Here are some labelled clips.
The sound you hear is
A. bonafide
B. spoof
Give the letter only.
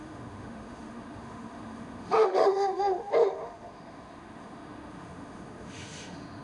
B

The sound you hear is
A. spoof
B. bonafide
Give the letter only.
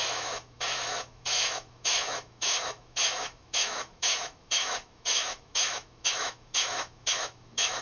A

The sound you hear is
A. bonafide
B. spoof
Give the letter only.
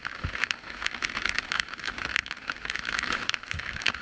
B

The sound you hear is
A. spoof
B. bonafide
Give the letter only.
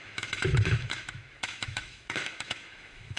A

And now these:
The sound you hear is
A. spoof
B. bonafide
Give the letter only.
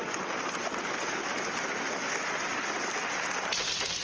B